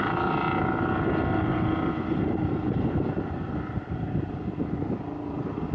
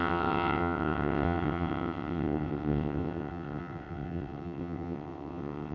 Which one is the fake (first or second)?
second